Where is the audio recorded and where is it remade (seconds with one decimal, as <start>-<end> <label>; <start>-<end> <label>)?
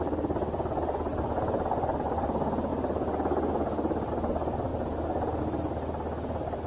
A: 0.0-1.1 recorded; 1.1-1.9 remade; 1.9-6.7 recorded